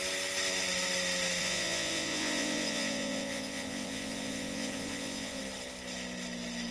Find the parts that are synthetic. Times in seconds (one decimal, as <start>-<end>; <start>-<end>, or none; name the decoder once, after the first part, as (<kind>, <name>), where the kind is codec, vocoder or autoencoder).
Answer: 1.4-5.4 (vocoder, Vocos)